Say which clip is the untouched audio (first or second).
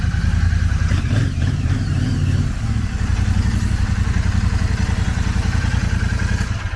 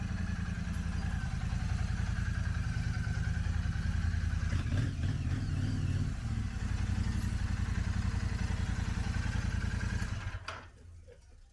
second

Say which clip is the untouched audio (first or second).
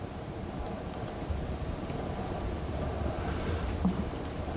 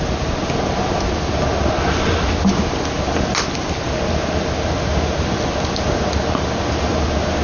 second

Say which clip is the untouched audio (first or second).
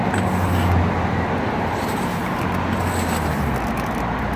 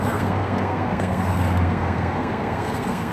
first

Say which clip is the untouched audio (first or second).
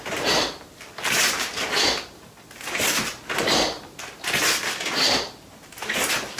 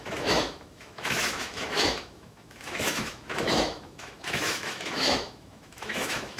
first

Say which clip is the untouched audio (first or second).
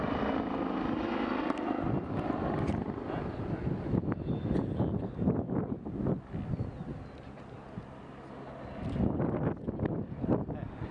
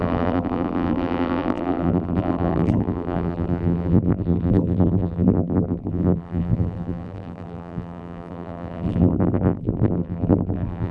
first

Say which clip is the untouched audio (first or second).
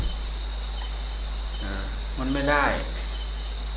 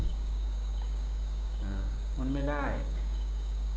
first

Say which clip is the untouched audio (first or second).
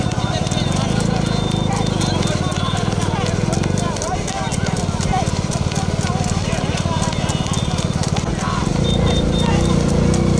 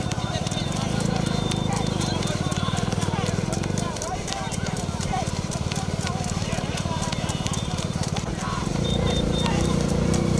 first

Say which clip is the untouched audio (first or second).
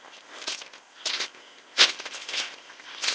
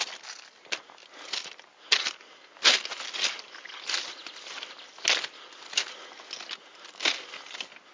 second